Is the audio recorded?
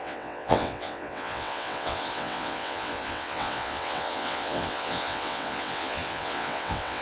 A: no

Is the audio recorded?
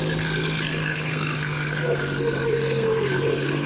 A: no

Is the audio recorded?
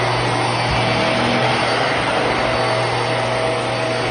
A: yes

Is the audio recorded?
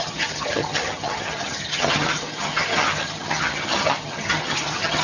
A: no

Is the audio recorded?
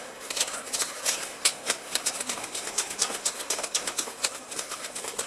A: no